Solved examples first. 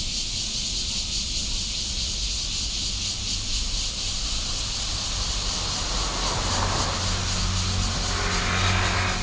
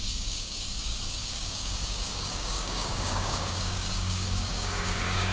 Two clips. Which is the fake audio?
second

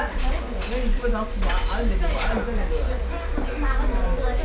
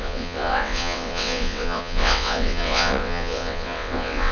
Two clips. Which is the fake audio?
second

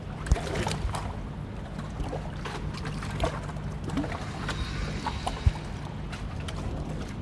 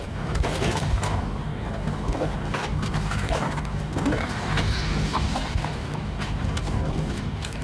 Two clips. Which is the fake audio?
second